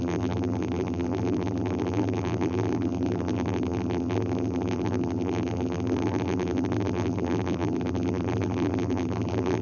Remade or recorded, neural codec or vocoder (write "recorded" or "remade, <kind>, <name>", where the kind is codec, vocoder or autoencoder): remade, vocoder, BigVGAN v2